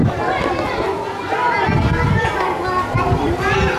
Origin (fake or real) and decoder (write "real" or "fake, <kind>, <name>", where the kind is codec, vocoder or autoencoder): real